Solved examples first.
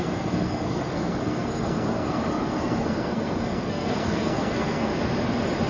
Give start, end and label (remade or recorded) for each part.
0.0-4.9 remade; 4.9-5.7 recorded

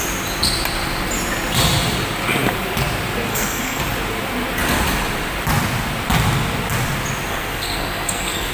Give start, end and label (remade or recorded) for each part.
0.0-3.3 recorded; 3.3-3.8 remade; 3.8-7.3 recorded; 7.3-8.5 remade

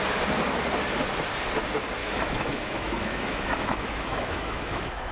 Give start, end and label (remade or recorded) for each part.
0.0-2.0 recorded; 2.0-5.1 remade

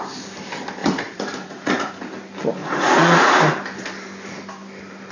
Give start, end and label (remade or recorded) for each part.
0.0-0.8 recorded; 0.8-1.9 remade; 1.9-2.6 recorded; 2.6-3.3 remade; 3.3-5.1 recorded

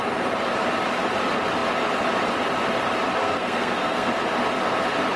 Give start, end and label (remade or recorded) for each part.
0.0-3.2 recorded; 3.2-4.1 remade; 4.1-5.2 recorded

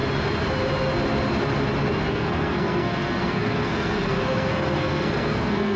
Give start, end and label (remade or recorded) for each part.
0.0-2.1 recorded; 2.1-5.8 remade